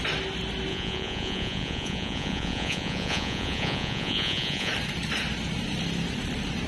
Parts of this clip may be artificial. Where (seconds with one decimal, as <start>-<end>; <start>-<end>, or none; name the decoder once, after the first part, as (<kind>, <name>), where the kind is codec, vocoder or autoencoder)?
0.7-4.7 (vocoder, Vocos)